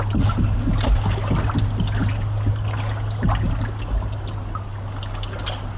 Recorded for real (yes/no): yes